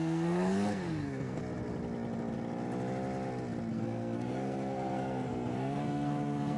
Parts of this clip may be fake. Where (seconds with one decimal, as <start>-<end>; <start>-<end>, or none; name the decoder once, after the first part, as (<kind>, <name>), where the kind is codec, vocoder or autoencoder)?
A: 0.0-1.4 (codec, SNAC); 3.7-6.6